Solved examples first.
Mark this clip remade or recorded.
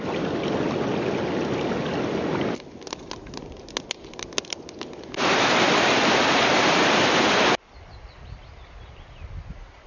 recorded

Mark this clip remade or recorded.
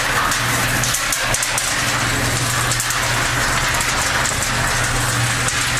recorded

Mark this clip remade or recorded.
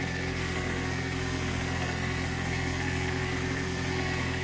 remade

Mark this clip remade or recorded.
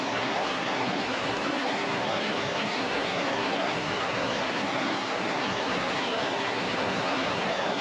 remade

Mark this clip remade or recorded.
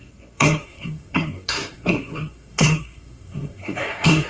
remade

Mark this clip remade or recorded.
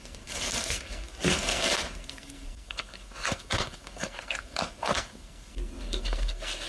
remade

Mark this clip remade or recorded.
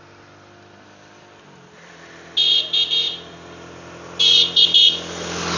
recorded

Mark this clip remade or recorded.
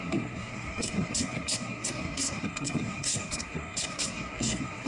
remade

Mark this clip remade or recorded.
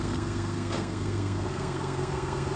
remade